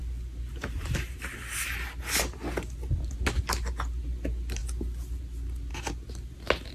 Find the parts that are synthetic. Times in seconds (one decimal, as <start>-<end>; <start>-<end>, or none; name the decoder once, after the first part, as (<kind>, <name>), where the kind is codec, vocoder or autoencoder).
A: none